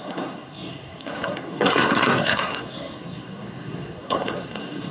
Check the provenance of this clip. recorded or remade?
remade